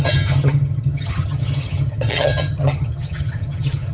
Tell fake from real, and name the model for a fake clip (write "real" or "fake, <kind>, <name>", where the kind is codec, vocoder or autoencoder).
fake, vocoder, HiFi-GAN